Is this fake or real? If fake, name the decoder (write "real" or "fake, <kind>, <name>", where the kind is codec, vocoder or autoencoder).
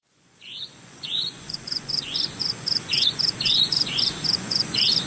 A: fake, vocoder, Vocos